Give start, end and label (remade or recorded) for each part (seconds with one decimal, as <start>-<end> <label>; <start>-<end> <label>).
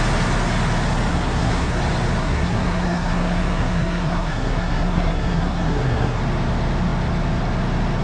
0.0-1.1 recorded; 1.1-1.8 remade; 1.8-2.2 recorded; 2.2-6.2 remade; 6.2-8.0 recorded